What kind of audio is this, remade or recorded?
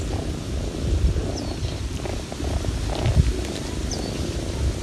recorded